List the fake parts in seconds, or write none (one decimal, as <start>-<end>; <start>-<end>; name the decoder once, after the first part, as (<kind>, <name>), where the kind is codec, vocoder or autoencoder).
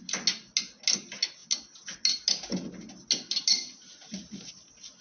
none